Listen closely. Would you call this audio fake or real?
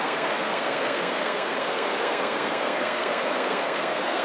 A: fake